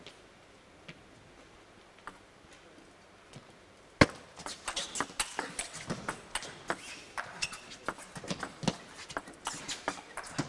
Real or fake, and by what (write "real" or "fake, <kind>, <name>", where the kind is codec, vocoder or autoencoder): real